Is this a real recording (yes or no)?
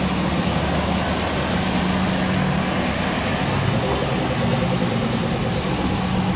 yes